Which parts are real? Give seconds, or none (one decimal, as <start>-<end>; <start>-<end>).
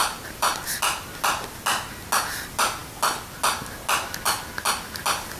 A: 0.0-5.4